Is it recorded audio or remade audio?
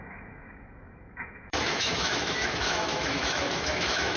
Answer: remade